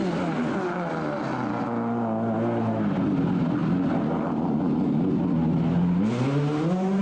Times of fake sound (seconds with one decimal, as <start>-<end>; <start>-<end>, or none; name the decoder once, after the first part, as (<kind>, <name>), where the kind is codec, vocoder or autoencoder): none